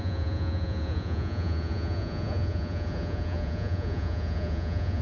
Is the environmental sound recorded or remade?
remade